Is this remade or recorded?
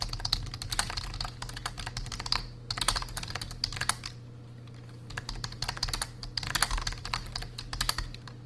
recorded